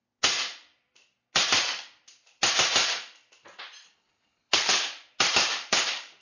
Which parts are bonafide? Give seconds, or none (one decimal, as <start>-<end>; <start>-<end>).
0.0-3.8; 4.8-6.2